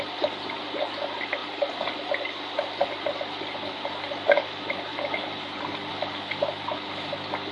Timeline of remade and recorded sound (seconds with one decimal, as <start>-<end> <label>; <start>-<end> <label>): 0.0-1.4 recorded; 1.4-5.9 remade; 5.9-7.5 recorded